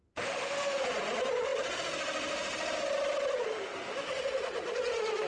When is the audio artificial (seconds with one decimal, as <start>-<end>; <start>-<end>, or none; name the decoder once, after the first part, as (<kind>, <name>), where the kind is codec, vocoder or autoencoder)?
0.0-0.8 (autoencoder, DAC-VAE); 3.5-4.1